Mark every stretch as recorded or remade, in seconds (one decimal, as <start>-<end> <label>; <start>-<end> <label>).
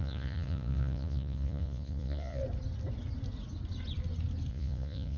0.0-2.4 remade; 2.4-4.5 recorded; 4.5-5.2 remade